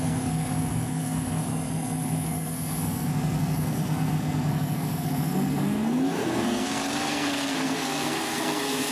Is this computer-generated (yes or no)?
yes